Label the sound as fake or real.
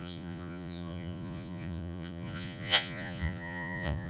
fake